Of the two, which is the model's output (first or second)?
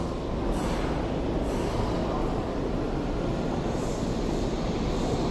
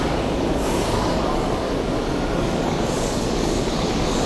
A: second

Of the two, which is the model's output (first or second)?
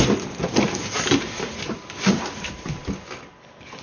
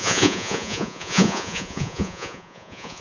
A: second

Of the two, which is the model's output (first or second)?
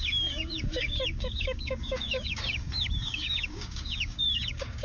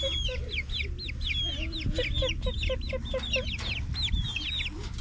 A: first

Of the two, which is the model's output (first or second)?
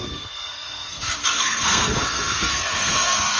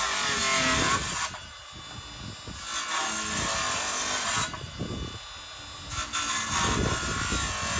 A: first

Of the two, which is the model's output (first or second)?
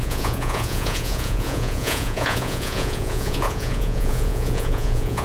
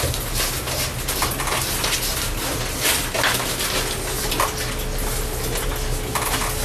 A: first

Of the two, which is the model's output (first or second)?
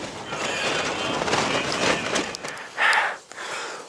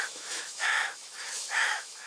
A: second